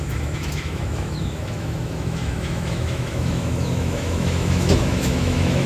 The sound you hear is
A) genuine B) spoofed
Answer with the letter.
B